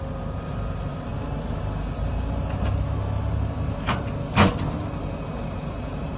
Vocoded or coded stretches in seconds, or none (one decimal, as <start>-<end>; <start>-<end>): 5.3-6.2